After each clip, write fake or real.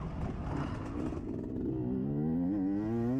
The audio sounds real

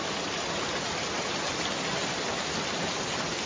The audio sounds real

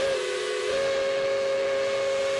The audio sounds real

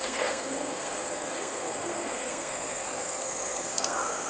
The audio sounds fake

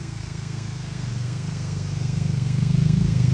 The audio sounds fake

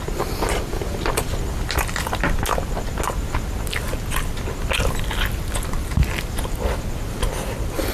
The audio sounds real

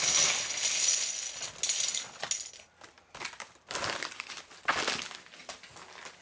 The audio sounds real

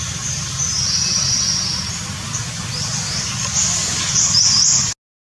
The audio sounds real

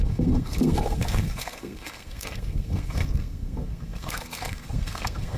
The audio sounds fake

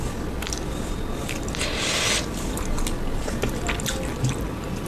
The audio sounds real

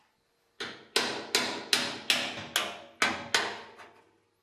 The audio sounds real